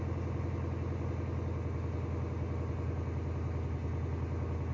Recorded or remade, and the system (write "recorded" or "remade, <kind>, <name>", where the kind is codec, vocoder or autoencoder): recorded